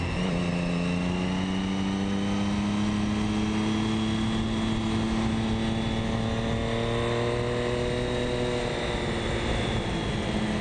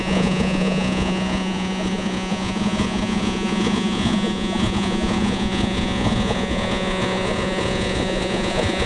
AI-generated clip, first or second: second